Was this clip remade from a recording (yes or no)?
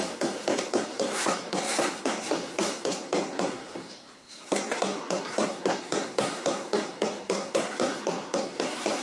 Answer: yes